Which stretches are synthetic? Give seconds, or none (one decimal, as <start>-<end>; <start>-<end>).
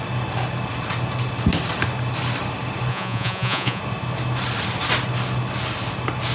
2.9-3.8